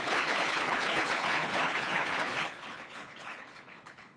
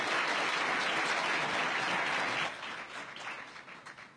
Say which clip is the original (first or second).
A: second